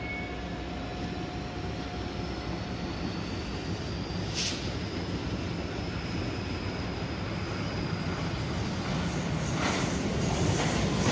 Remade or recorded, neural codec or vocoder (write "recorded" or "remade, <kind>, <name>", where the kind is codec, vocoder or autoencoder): recorded